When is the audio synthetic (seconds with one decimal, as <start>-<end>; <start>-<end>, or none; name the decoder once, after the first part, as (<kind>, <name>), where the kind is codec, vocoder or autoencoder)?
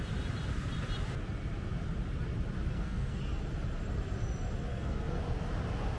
2.7-3.2 (codec, SNAC); 4.7-5.2